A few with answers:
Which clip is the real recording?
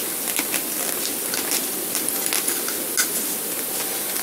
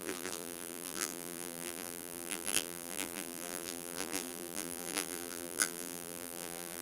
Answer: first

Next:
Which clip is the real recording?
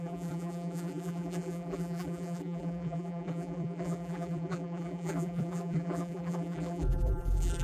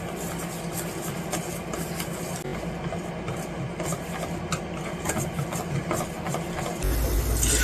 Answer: second